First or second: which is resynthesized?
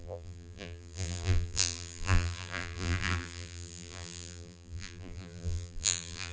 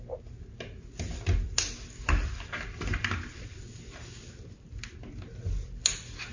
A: first